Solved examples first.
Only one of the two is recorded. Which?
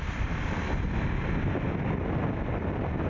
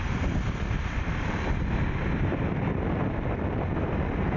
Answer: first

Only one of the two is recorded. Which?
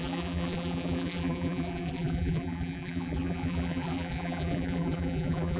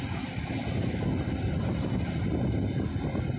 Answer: second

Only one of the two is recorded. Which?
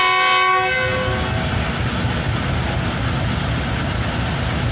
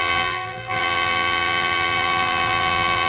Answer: first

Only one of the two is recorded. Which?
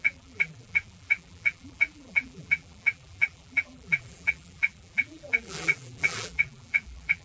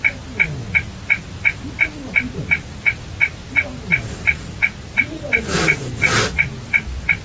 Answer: second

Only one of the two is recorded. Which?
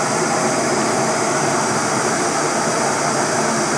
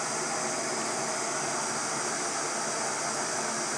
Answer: second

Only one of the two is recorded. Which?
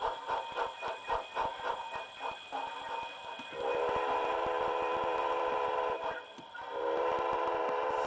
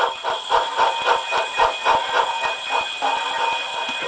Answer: second